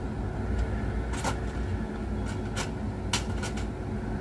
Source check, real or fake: real